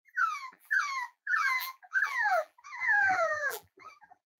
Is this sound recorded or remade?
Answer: remade